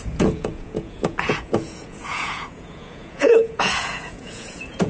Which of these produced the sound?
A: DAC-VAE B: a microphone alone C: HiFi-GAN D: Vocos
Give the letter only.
D